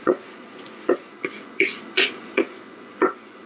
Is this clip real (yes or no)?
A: no